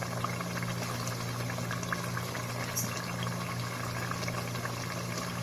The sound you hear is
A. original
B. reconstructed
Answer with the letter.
A